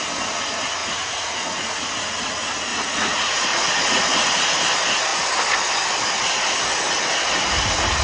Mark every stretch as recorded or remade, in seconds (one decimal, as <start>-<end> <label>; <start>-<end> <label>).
0.0-0.8 recorded; 0.8-1.9 remade; 1.9-2.7 recorded; 2.7-4.6 remade; 4.6-8.0 recorded